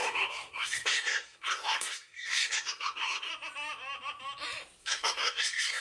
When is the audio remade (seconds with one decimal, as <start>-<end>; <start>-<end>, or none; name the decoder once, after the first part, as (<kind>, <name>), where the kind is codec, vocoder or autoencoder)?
0.0-3.3 (codec, SNAC); 4.8-5.8